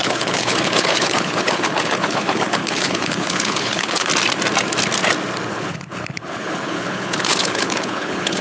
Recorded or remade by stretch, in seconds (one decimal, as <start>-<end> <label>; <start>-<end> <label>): 0.0-4.1 remade; 4.1-5.5 recorded; 5.5-8.4 remade